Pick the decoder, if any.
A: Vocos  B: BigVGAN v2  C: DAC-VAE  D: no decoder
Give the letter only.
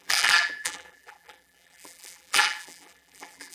B